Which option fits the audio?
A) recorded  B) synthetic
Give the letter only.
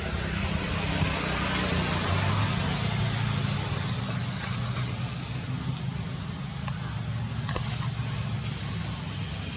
A